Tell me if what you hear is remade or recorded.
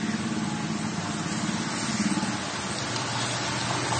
recorded